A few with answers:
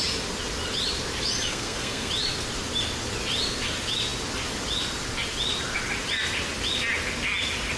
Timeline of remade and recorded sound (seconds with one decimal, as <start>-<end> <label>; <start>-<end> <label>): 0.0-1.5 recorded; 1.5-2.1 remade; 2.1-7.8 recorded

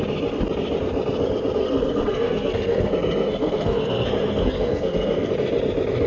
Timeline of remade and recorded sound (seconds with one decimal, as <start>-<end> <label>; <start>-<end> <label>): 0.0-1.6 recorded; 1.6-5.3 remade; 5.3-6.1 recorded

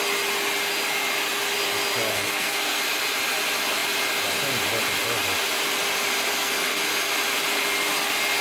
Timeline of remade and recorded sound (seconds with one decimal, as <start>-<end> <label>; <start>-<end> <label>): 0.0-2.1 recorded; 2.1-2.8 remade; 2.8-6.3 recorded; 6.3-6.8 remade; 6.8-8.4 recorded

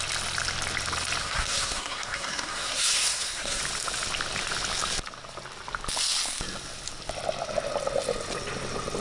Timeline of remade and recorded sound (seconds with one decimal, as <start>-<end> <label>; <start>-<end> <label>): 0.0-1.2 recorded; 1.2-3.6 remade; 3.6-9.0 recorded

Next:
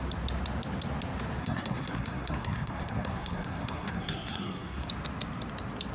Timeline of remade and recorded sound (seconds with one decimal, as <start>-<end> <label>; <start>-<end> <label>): 0.0-1.4 recorded; 1.4-4.9 remade; 4.9-5.9 recorded

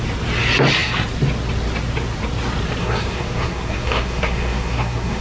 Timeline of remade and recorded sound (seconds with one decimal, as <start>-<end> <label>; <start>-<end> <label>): 0.0-2.8 recorded; 2.8-5.2 remade

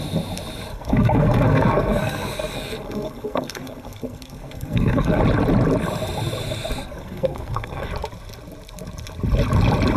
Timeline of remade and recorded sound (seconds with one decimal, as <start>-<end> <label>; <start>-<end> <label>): 0.0-0.7 recorded; 0.7-5.2 remade; 5.2-6.9 recorded; 6.9-7.9 remade; 7.9-10.0 recorded